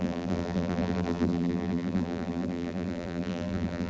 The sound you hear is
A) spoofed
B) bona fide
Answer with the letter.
A